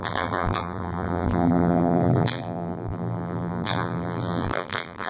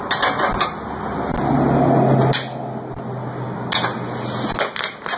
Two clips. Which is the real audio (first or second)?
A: second